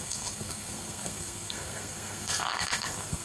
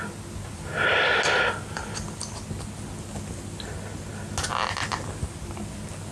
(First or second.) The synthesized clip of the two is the first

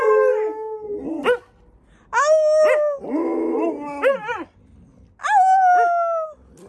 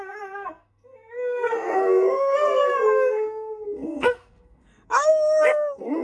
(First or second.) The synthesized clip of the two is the second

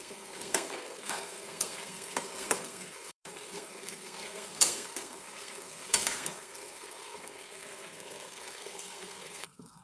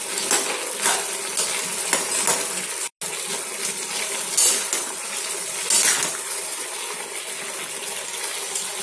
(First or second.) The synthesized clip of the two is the first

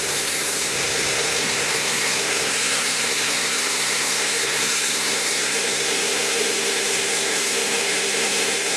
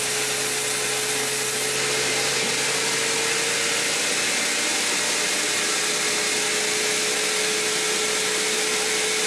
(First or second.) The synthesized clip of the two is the first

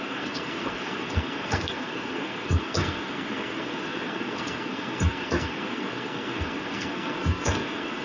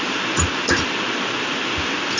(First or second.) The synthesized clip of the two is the first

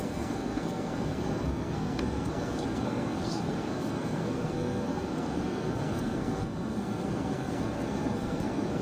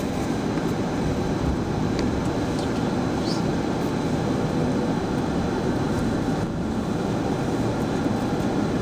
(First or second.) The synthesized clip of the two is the first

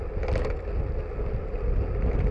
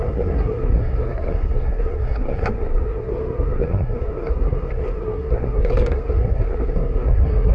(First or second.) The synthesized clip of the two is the second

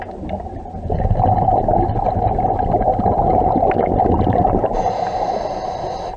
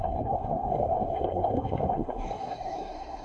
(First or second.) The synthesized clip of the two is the second